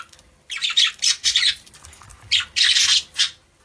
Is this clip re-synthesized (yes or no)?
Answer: no